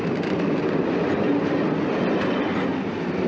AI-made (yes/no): no